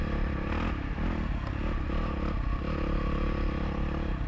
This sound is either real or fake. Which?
real